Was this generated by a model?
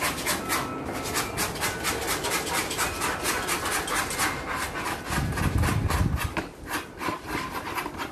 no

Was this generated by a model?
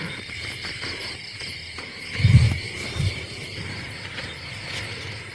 yes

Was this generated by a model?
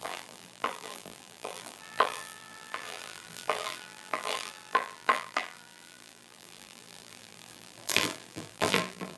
yes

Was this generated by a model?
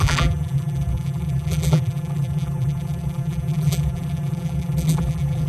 yes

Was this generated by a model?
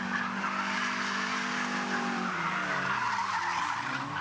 no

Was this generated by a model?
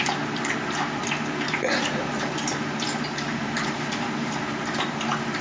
yes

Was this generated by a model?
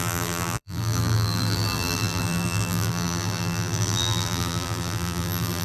yes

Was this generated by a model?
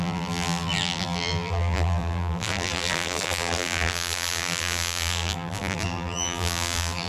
yes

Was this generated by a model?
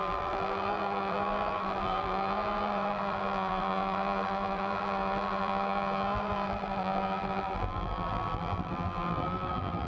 yes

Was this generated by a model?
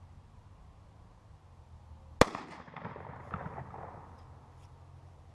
no